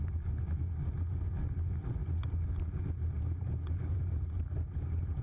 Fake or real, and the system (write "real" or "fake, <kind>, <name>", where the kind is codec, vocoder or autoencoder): real